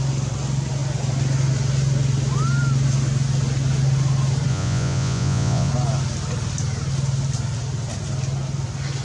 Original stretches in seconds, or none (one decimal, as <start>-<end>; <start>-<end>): 0.0-4.5; 5.7-9.0